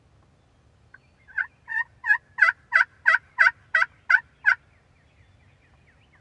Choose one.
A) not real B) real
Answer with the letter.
B